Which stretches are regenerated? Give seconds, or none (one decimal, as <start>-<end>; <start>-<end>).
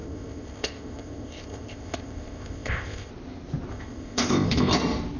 0.0-3.1; 3.7-4.7